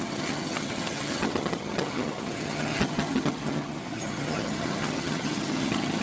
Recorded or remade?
remade